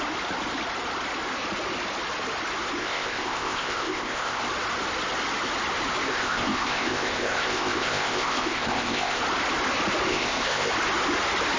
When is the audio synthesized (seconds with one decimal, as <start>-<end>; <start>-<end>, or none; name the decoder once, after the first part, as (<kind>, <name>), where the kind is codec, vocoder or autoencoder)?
2.8-4.4 (codec, ZipCodec); 6.1-9.2; 10.1-10.7